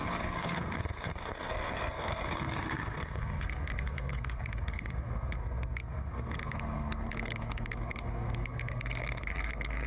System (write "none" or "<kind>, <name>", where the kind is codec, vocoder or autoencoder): codec, SNAC